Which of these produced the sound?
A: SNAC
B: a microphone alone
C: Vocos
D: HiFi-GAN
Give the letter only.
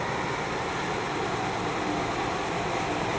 B